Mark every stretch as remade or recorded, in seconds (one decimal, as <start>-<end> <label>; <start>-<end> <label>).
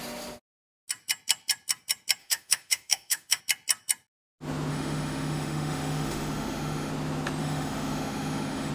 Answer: 0.0-2.2 recorded; 2.2-3.4 remade; 3.4-4.7 recorded; 4.7-6.9 remade; 6.9-7.4 recorded; 7.4-8.7 remade